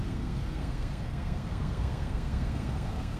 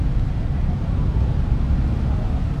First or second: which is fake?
first